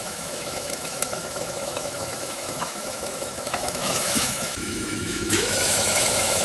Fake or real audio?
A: fake